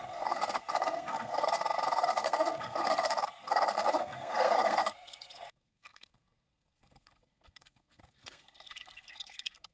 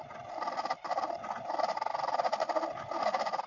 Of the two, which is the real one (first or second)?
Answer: second